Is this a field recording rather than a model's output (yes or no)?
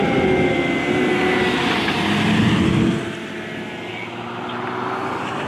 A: yes